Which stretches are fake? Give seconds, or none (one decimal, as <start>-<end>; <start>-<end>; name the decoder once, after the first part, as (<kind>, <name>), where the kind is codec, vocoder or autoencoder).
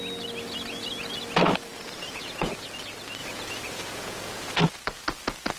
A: 1.7-2.5 (vocoder, Vocos); 3.2-4.6